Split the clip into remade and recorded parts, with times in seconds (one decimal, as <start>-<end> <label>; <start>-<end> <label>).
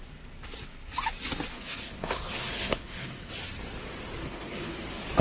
0.0-1.5 recorded; 1.5-3.3 remade; 3.3-4.2 recorded; 4.2-4.7 remade; 4.7-5.2 recorded